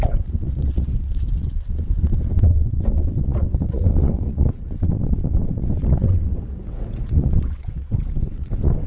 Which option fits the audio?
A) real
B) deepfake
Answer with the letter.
B